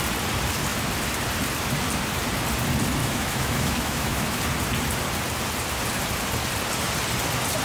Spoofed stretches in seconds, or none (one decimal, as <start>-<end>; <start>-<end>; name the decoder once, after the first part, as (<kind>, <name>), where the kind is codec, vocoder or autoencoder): 3.0-4.4 (autoencoder, DAC-VAE)